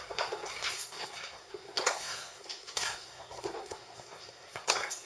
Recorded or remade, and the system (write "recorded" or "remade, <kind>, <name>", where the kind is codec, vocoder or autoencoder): remade, codec, SNAC